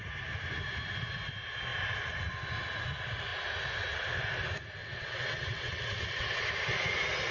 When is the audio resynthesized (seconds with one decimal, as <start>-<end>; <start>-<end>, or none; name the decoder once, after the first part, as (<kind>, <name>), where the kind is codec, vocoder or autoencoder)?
4.8-6.4 (vocoder, WaveNeXt)